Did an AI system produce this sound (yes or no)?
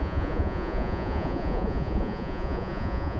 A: yes